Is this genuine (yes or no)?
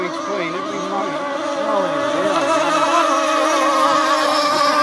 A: yes